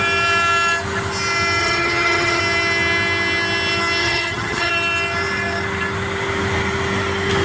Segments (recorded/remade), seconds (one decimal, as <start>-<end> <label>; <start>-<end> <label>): 0.0-1.6 recorded; 1.6-2.4 remade; 2.4-4.0 recorded; 4.0-4.7 remade; 4.7-7.4 recorded